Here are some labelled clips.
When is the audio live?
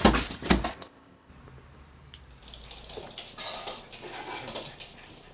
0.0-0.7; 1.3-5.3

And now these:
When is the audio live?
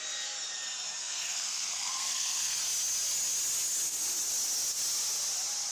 0.0-1.0; 2.6-5.7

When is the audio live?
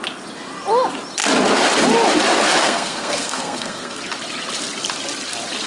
0.0-2.6; 4.0-5.7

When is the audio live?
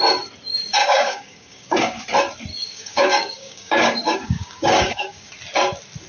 0.0-0.8; 2.0-2.5; 5.3-6.1